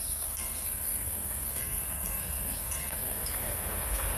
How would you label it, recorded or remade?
remade